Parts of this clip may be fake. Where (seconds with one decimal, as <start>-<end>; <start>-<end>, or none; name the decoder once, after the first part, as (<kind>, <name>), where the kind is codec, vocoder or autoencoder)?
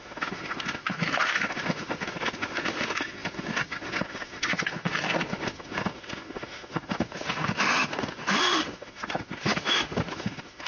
0.0-10.7 (autoencoder, DAC-VAE)